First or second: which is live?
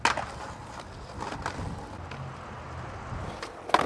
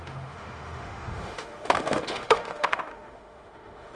first